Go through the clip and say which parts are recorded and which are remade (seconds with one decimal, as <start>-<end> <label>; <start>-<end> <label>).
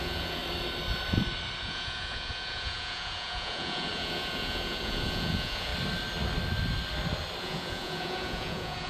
0.0-0.4 remade; 0.4-1.6 recorded; 1.6-5.7 remade; 5.7-7.4 recorded; 7.4-8.9 remade